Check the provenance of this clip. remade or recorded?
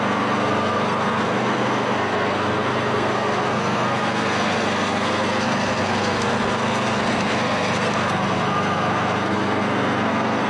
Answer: remade